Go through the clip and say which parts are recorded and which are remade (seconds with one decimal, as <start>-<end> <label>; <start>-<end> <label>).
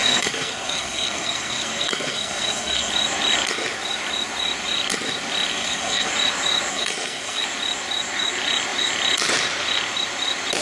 0.0-2.9 remade; 2.9-5.5 recorded; 5.5-6.1 remade; 6.1-6.7 recorded; 6.7-7.4 remade; 7.4-10.6 recorded